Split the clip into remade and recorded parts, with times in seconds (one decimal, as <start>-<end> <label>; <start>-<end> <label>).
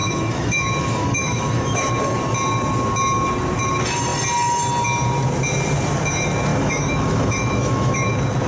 0.0-1.9 remade; 1.9-6.5 recorded; 6.5-8.1 remade; 8.1-8.5 recorded